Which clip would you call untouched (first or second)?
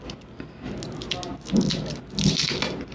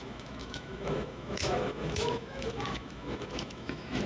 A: first